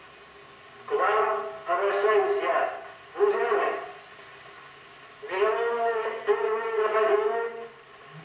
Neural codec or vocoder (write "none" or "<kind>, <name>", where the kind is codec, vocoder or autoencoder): none